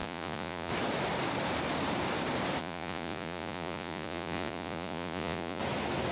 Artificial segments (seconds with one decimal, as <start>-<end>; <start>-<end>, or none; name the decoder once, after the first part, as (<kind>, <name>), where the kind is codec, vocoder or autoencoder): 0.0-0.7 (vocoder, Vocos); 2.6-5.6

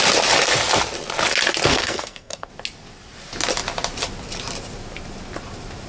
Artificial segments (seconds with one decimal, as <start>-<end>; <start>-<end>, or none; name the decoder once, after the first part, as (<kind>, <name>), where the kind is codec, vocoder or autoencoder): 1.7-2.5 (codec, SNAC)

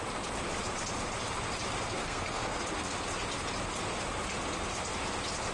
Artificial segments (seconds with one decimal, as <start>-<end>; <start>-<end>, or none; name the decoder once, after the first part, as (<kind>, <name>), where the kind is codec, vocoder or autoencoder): 2.0-2.6 (codec, SNAC)

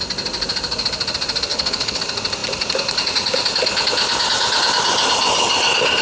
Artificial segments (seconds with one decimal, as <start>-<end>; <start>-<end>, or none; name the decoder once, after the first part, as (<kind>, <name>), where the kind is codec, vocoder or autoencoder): 1.5-2.0 (codec, HILCodec)